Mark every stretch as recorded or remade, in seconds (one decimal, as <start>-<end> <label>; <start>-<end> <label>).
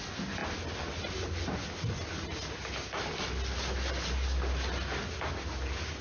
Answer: 0.0-6.0 recorded